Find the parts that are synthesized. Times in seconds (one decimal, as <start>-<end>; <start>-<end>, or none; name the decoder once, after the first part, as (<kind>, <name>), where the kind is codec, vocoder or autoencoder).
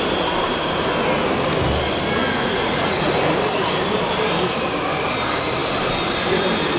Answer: 2.2-3.1 (vocoder, Vocos)